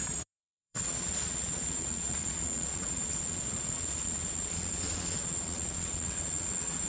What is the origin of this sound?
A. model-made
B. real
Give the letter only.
A